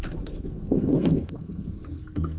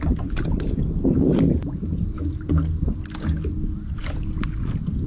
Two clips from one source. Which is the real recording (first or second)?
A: second